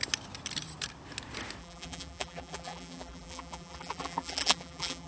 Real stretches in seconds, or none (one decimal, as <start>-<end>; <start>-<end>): 0.0-1.6

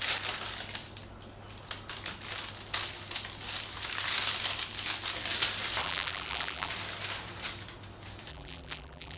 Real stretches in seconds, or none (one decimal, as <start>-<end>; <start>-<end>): 0.0-5.8; 6.7-8.3

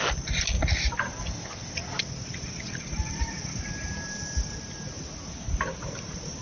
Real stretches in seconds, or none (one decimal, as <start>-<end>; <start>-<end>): 0.0-6.4

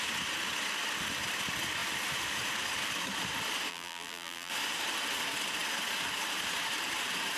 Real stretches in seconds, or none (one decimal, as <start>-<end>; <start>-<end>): 0.0-3.7; 4.5-7.4

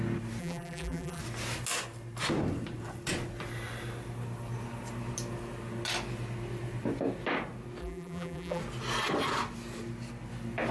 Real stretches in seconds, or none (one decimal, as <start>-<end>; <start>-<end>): 0.0-0.4; 1.2-7.8; 8.6-10.7

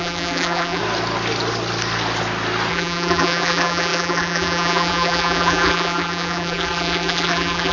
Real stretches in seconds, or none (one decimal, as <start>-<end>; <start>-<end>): 0.8-2.7

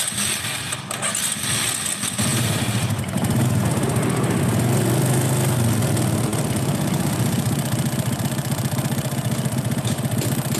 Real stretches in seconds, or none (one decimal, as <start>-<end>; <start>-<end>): 0.0-2.3; 4.7-10.6

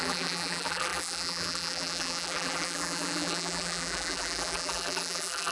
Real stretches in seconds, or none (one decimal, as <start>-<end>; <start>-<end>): none